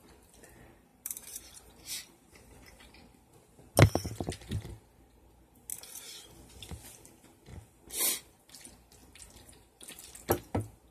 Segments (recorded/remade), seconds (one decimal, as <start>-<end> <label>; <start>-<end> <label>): 0.0-0.9 recorded; 0.9-2.9 remade; 2.9-9.0 recorded; 9.0-10.1 remade; 10.1-10.9 recorded